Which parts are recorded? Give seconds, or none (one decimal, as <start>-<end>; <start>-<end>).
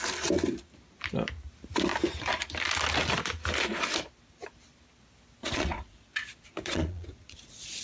0.0-5.4